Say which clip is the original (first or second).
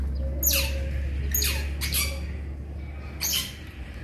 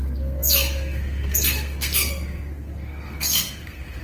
first